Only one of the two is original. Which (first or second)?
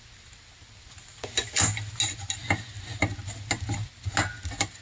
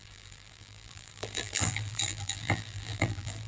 first